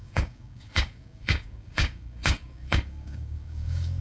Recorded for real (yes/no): no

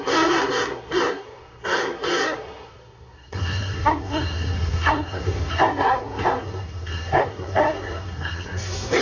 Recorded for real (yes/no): no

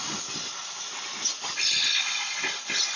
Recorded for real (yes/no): yes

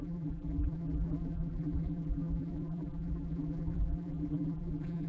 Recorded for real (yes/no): no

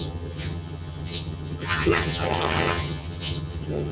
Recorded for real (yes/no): no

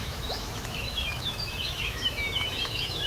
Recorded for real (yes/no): no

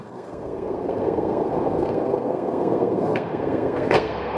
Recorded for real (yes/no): no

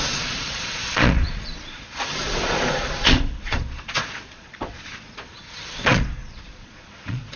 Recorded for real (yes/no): no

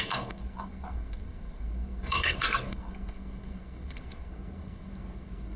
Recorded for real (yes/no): no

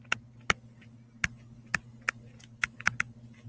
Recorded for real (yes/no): yes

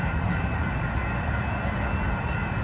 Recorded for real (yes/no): no